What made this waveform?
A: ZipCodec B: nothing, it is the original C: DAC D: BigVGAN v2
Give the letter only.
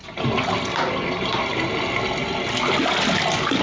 B